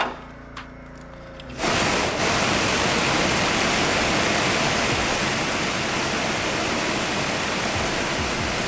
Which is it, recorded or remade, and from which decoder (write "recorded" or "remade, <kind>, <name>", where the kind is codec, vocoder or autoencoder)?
recorded